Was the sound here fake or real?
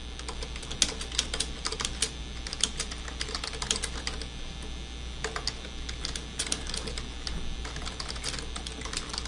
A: real